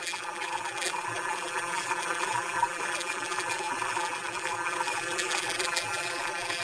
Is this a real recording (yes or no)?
no